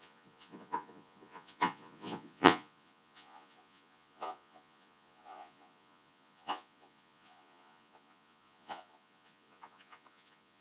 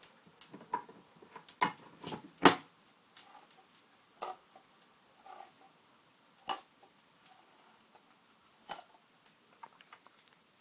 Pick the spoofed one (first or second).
first